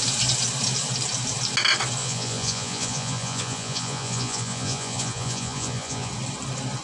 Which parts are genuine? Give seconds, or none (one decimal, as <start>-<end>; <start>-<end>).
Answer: 0.0-2.0; 6.1-6.8